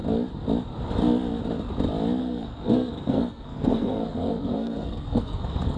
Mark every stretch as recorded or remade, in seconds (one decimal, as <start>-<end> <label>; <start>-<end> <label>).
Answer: 0.0-2.2 recorded; 2.2-5.8 remade